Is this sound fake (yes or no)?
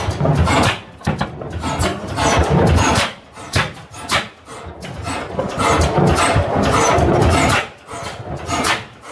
no